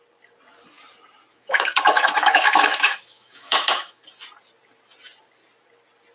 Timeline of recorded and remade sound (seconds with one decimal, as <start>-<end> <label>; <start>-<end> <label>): 0.0-1.3 recorded; 1.3-4.0 remade; 4.0-6.1 recorded